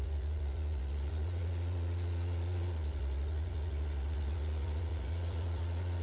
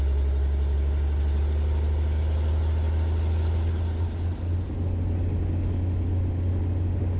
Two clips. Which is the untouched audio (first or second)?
second